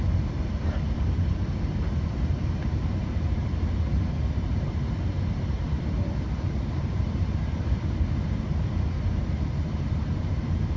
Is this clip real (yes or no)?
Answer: no